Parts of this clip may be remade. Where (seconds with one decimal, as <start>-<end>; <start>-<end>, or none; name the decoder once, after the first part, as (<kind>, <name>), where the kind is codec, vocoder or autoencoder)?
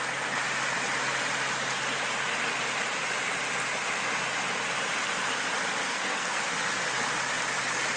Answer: 5.8-6.4 (codec, SNAC)